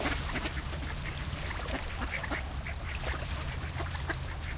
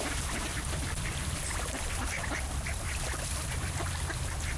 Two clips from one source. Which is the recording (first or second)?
first